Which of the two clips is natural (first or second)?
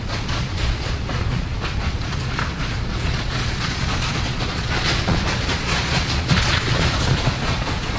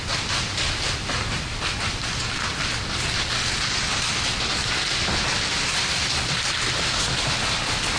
second